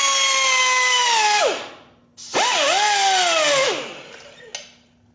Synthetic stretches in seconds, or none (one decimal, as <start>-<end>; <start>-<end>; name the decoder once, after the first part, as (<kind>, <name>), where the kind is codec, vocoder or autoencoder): none